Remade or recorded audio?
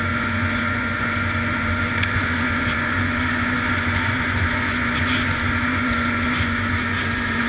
remade